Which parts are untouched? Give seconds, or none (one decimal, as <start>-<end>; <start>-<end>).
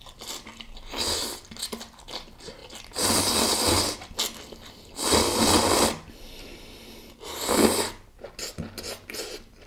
0.0-9.7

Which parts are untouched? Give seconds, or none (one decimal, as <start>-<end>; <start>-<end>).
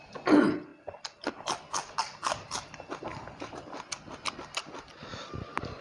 0.0-5.8